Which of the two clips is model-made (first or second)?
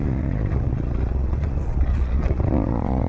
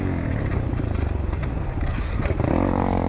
first